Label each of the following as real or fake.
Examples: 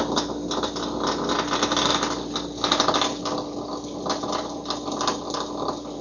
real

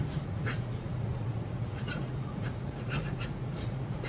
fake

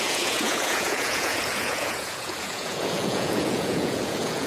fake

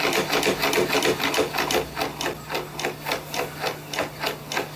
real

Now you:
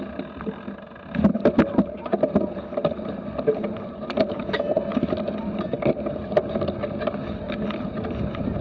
real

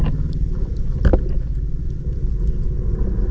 real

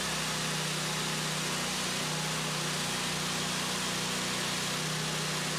real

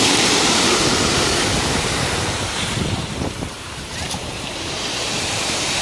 fake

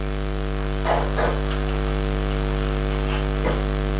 real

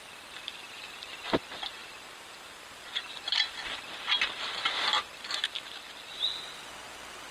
real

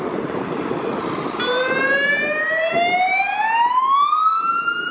real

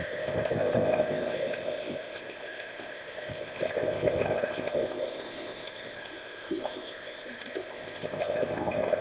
fake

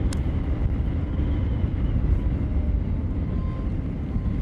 real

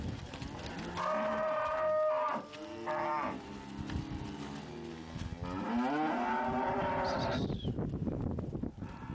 real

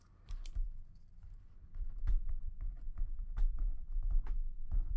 fake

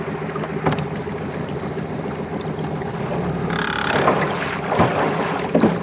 real